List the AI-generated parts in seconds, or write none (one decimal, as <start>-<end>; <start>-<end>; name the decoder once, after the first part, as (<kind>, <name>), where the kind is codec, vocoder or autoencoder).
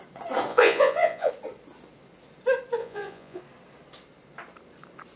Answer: 0.5-1.3 (vocoder, Vocos); 2.8-3.4